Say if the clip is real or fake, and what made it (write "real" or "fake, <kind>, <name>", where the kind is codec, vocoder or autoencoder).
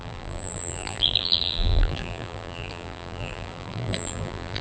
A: fake, vocoder, BigVGAN v2